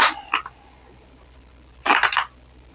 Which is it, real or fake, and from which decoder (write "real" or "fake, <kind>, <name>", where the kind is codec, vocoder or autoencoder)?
real